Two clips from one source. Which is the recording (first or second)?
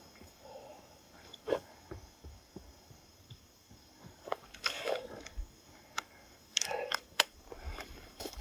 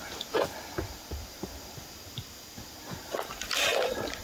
second